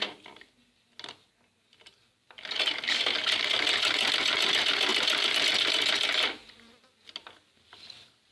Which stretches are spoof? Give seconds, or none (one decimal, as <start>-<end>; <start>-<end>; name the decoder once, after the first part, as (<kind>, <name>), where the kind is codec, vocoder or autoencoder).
none